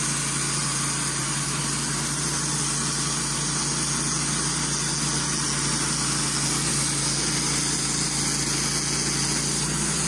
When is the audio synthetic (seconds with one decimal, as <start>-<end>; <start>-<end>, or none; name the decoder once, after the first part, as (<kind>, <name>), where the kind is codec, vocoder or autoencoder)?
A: none